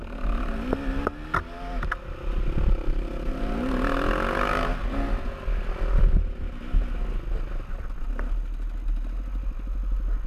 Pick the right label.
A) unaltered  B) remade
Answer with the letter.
A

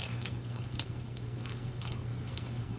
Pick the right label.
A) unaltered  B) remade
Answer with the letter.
B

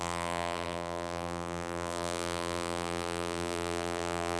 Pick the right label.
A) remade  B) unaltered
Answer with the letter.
A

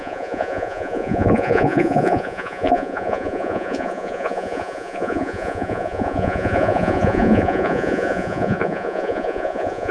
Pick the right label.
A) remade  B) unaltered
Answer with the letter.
A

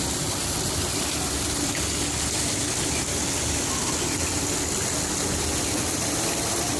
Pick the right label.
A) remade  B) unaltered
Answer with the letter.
B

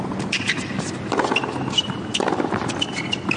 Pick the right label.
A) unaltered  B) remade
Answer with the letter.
A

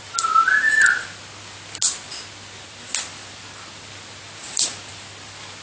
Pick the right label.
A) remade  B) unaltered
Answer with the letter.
B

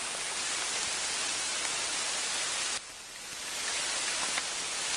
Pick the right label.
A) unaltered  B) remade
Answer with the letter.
A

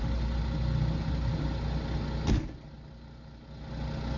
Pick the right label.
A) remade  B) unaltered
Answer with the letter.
B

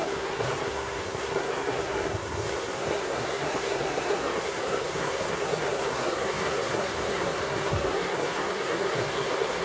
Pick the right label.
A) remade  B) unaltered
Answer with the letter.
A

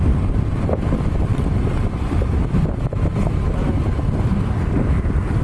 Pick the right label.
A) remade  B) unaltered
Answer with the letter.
B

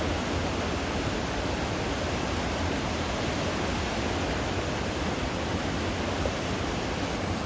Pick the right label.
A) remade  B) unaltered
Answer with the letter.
B